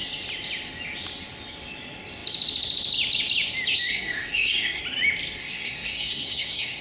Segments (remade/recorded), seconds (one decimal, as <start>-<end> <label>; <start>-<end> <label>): 0.0-3.9 recorded; 3.9-4.8 remade; 4.8-5.4 recorded; 5.4-6.8 remade